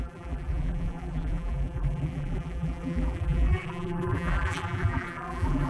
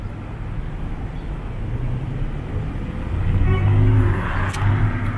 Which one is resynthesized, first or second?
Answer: first